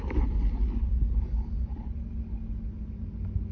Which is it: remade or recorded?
recorded